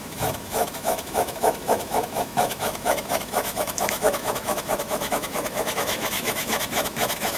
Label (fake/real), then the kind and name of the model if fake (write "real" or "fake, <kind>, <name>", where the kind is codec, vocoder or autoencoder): fake, autoencoder, DAC-VAE